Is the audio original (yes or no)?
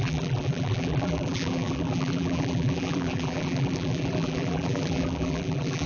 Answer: no